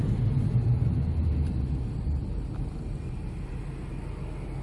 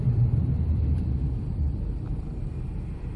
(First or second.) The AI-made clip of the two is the second